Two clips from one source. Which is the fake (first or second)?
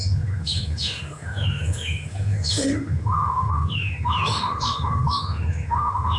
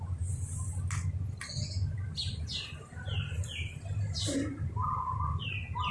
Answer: first